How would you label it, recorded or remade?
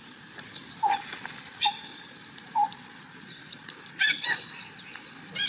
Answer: recorded